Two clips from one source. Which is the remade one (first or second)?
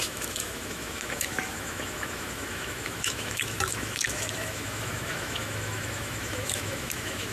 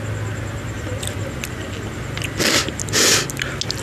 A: first